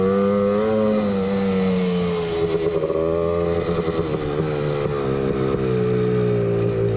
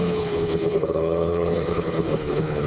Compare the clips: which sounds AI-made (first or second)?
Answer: second